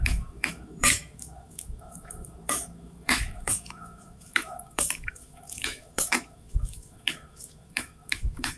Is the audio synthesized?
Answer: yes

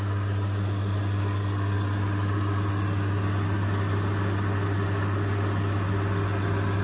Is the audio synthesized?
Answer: no